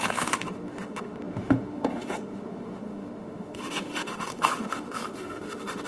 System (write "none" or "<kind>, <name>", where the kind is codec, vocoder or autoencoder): autoencoder, DAC-VAE